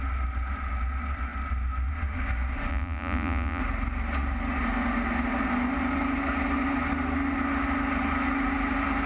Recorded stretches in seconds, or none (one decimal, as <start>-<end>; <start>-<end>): 0.0-2.7; 3.6-9.1